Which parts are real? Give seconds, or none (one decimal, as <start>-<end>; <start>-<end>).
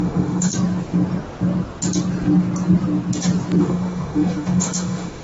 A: 0.5-3.6